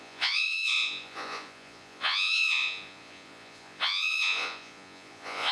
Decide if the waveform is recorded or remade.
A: remade